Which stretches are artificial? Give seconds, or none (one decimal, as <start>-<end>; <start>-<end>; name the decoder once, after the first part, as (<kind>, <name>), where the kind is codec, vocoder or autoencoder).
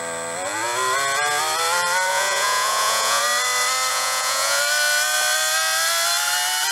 2.1-3.2 (vocoder, Vocos); 3.9-4.6